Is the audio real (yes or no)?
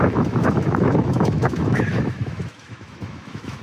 no